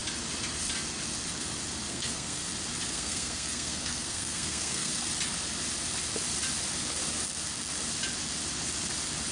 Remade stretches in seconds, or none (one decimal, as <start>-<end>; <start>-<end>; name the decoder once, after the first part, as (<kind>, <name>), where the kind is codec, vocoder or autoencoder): 1.9-2.4 (codec, SNAC); 2.9-4.9